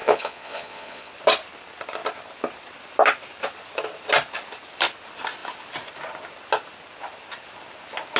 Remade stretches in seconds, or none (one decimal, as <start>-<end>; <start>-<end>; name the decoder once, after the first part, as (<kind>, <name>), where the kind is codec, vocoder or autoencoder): 0.0-1.1 (vocoder, Vocos)